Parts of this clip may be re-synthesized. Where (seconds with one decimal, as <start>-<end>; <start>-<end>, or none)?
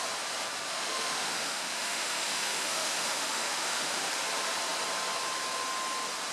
0.7-4.1